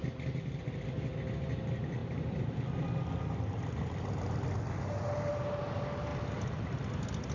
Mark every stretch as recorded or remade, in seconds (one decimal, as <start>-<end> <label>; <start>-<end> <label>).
0.0-1.1 remade; 1.1-2.0 recorded; 2.0-2.5 remade; 2.5-7.3 recorded